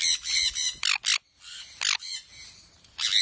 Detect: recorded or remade recorded